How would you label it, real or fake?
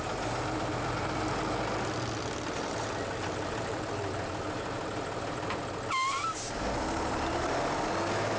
real